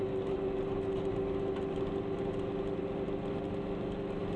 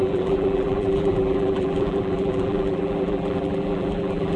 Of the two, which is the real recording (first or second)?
first